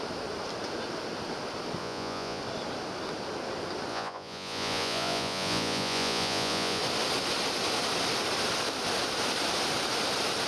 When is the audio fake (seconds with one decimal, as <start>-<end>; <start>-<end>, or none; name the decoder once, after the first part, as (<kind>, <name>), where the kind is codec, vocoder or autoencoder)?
1.8-2.4 (vocoder, Vocos); 3.9-6.8